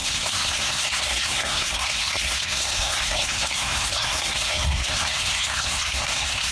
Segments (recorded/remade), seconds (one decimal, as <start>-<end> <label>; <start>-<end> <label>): 0.0-6.5 remade